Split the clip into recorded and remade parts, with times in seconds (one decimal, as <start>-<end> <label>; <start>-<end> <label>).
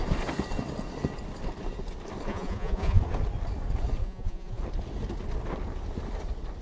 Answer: 0.0-2.3 recorded; 2.3-3.0 remade; 3.0-4.0 recorded; 4.0-4.6 remade; 4.6-6.6 recorded